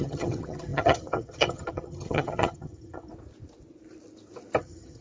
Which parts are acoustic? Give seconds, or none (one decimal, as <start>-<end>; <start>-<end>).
3.1-4.6